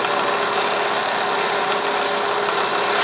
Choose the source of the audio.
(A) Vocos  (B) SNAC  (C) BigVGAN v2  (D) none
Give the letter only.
D